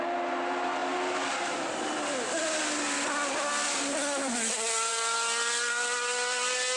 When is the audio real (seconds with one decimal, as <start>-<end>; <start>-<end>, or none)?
0.0-6.8